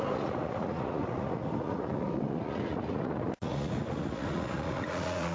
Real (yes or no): no